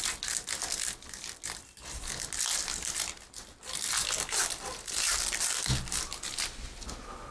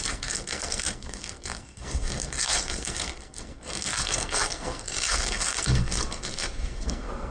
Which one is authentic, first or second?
first